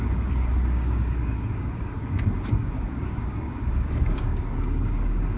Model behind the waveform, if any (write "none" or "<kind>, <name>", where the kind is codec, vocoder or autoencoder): codec, DAC